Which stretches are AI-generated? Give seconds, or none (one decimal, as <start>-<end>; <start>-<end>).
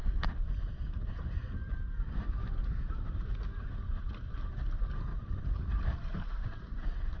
5.1-6.1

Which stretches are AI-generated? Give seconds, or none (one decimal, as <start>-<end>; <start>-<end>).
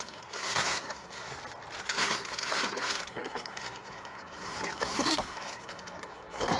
0.0-1.3; 1.8-6.6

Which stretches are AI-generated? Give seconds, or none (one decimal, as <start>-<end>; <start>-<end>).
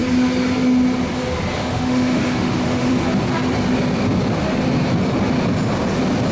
1.6-2.9